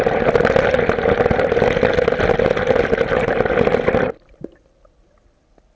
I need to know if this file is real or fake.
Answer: real